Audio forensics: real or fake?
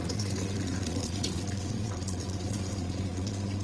fake